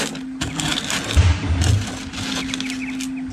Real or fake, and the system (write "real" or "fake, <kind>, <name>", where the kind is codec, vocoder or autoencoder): real